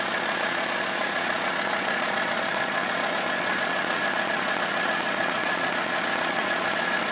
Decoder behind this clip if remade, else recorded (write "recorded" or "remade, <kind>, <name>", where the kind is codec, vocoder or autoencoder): remade, vocoder, Vocos